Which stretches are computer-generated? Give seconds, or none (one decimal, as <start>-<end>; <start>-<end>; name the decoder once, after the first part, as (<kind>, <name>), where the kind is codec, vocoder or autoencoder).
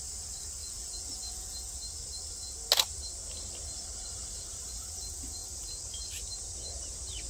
0.6-1.7 (vocoder, Vocos)